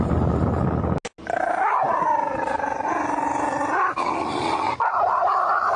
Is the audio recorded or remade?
recorded